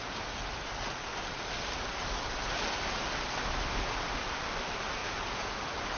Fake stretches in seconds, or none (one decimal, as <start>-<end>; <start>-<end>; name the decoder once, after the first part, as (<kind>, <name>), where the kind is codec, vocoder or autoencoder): 5.0-5.6 (vocoder, Vocos)